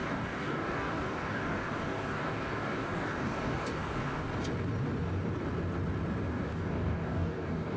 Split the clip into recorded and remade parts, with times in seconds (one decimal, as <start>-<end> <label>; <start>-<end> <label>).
0.0-4.3 remade; 4.3-6.3 recorded; 6.3-7.8 remade